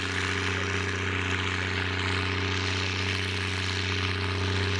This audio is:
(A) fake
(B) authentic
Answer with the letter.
B